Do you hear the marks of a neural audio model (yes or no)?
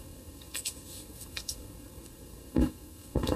yes